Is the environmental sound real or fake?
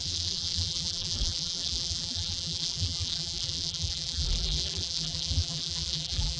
fake